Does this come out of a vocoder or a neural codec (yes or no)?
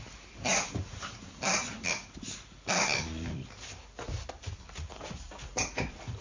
yes